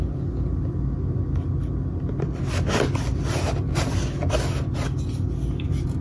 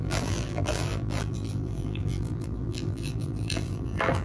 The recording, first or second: first